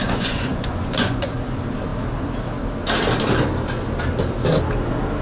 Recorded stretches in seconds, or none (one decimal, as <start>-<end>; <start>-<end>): 1.3-5.2